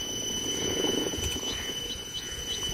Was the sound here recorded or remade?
remade